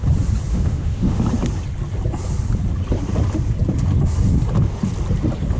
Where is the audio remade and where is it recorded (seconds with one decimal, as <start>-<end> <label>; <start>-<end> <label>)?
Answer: 0.0-0.5 recorded; 0.5-1.2 remade; 1.2-5.6 recorded